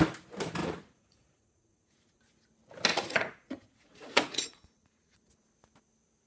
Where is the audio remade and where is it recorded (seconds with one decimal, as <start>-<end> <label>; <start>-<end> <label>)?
0.0-0.6 recorded; 0.6-2.2 remade; 2.2-2.9 recorded; 2.9-5.3 remade; 5.3-6.3 recorded